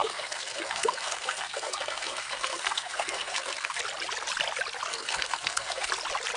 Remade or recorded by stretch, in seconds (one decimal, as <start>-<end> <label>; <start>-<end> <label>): 0.0-3.8 remade; 3.8-4.9 recorded; 4.9-5.9 remade; 5.9-6.4 recorded